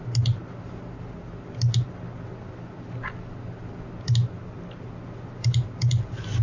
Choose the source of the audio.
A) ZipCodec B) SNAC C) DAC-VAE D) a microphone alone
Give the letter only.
D